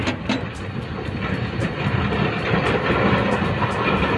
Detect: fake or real real